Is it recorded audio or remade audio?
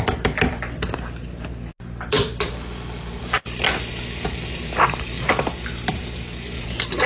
recorded